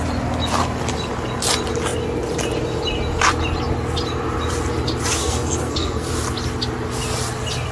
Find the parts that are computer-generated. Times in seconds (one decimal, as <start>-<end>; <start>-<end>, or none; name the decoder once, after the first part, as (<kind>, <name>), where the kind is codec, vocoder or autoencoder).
5.2-6.1 (codec, SNAC)